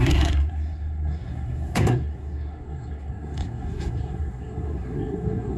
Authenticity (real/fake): fake